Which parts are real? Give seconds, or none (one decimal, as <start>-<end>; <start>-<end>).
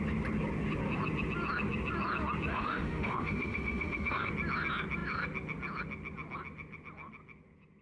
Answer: 0.0-2.5; 4.3-7.8